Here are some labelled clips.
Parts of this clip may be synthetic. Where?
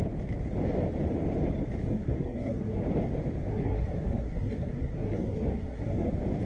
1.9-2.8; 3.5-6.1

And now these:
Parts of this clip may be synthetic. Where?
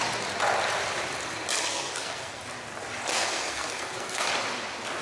1.7-2.4; 3.1-4.3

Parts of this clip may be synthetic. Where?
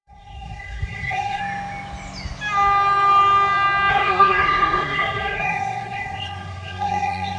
0.0-1.4; 3.9-7.4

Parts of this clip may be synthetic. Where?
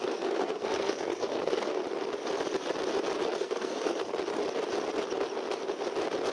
0.0-1.8; 3.4-4.1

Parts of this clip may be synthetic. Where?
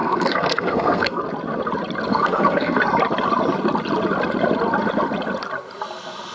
0.0-1.2; 2.1-2.8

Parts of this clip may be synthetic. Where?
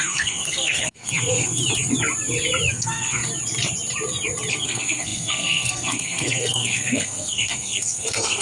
0.0-1.6; 2.7-3.2; 4.5-8.4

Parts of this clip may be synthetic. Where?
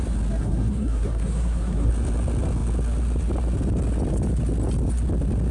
0.4-1.9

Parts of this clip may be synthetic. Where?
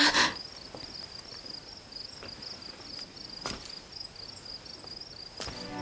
none